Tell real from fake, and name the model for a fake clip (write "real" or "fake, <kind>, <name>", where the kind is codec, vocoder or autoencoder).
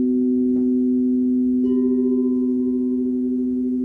real